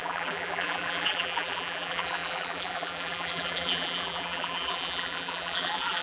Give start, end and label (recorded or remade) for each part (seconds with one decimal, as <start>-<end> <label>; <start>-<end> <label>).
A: 0.0-6.0 remade